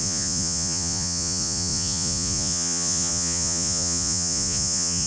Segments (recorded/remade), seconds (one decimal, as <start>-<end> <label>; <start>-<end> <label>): 0.0-5.1 remade

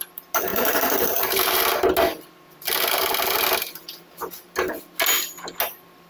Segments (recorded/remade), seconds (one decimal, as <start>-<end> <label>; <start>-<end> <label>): 0.0-0.5 recorded; 0.5-1.6 remade; 1.6-6.1 recorded

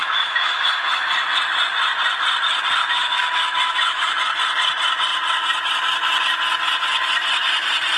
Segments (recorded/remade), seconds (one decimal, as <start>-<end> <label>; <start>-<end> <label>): 0.0-1.1 remade; 1.1-2.8 recorded; 2.8-4.2 remade; 4.2-8.0 recorded

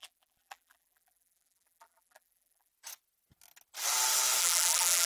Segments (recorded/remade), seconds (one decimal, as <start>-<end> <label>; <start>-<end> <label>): 0.0-2.7 remade; 2.7-4.4 recorded; 4.4-5.1 remade